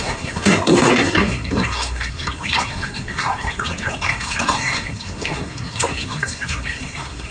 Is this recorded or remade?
remade